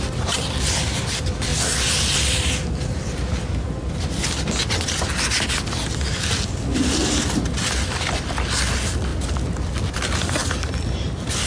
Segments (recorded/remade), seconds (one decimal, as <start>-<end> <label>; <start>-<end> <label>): 0.0-11.5 recorded